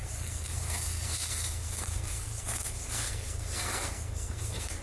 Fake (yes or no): yes